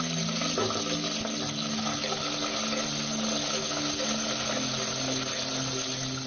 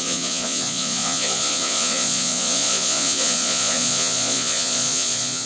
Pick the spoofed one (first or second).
second